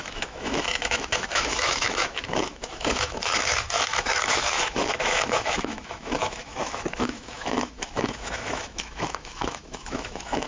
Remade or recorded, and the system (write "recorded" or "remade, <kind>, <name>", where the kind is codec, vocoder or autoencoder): remade, autoencoder, DAC-VAE